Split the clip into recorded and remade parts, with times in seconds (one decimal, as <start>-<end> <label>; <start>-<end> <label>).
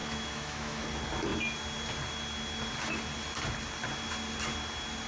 0.0-0.8 remade; 0.8-5.1 recorded